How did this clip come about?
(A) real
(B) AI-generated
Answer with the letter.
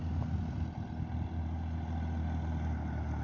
A